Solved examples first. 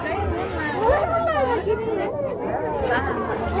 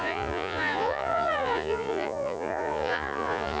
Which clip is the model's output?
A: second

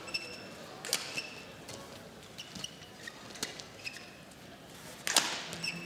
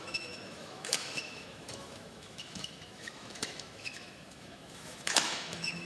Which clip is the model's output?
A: second